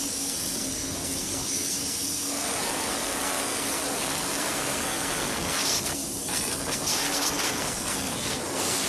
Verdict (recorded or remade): remade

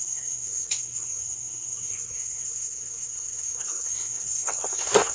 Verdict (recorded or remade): remade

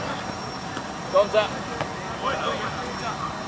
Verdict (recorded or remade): recorded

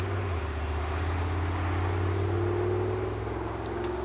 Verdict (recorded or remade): recorded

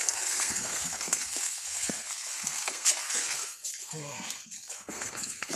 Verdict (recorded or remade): remade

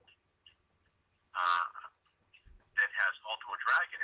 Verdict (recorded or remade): recorded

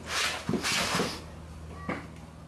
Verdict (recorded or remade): recorded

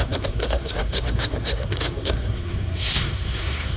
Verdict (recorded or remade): remade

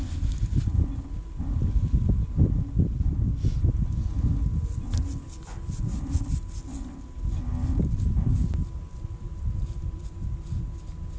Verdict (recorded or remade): recorded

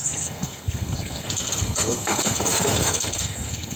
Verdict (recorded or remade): remade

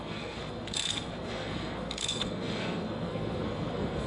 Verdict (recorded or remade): remade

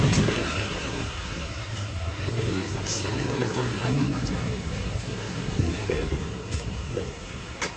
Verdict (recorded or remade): remade